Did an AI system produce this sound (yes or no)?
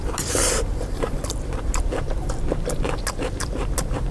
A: yes